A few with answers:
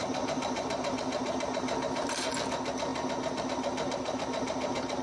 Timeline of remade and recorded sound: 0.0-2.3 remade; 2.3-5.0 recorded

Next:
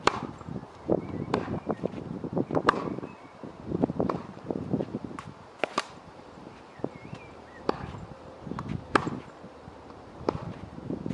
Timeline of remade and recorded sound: 0.0-11.1 remade

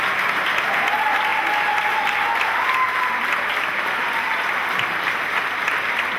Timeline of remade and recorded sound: 0.0-6.2 recorded

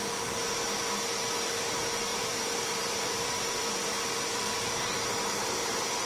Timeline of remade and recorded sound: 0.0-2.1 recorded; 2.1-4.9 remade; 4.9-6.0 recorded

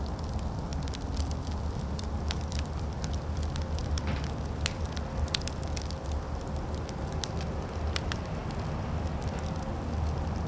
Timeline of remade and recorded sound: 0.0-10.5 recorded